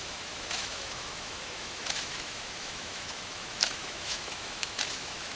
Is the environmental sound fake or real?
fake